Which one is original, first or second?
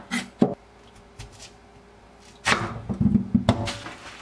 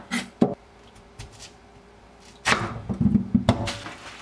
first